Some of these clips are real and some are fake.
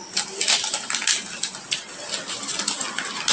real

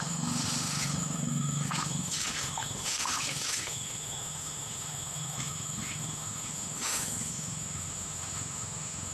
fake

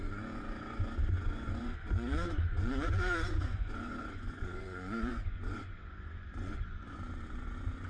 fake